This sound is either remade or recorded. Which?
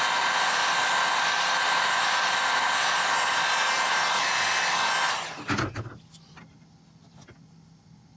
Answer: recorded